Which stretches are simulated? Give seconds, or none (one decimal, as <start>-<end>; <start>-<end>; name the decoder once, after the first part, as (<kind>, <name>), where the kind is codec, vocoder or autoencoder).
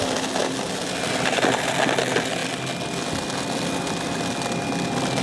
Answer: none